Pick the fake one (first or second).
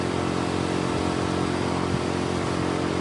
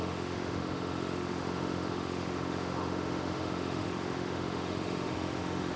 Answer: second